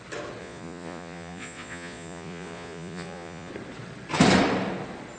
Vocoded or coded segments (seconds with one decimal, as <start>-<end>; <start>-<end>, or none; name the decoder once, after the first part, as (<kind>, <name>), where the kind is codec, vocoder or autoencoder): 0.4-3.5 (vocoder, Vocos)